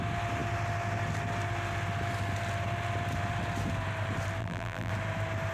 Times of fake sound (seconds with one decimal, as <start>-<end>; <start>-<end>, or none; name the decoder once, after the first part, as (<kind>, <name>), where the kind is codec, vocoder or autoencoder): 4.4-4.9 (vocoder, BigVGAN v2)